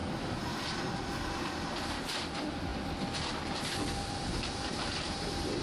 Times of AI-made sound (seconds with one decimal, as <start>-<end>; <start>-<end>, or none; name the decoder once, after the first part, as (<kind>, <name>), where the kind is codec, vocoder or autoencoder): 0.0-5.6 (vocoder, BigVGAN v2)